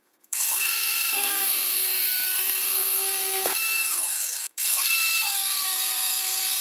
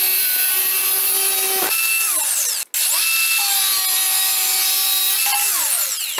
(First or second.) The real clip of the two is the second